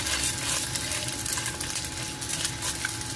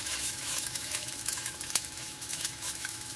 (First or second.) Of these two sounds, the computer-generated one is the second